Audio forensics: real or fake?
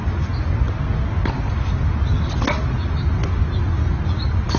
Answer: real